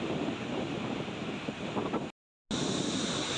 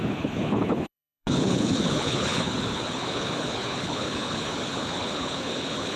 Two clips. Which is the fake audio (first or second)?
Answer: second